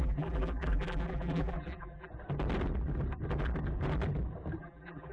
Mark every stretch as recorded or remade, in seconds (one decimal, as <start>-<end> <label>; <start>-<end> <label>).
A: 0.0-2.1 remade; 2.1-4.6 recorded; 4.6-5.1 remade